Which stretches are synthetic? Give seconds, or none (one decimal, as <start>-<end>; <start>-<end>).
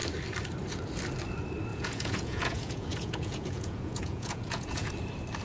1.7-4.9